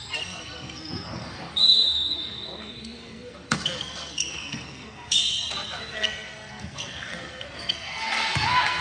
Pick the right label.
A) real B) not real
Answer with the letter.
B